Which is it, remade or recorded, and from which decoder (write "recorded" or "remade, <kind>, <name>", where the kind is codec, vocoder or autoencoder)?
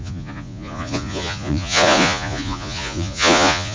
remade, vocoder, Vocos